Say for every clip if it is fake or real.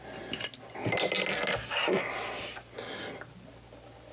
real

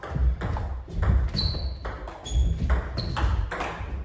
real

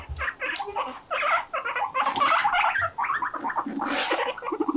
real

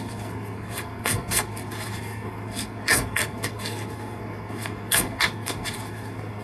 fake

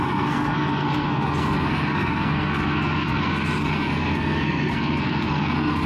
fake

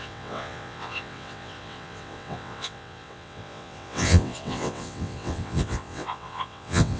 fake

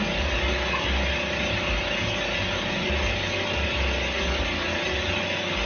real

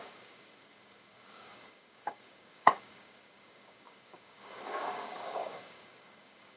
fake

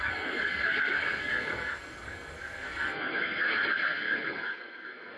fake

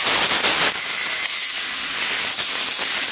real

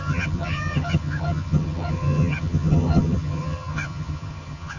fake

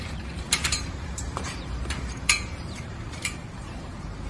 fake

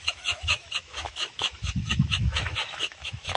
fake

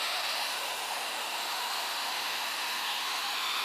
fake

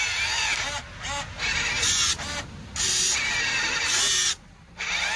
real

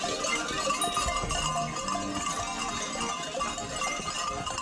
real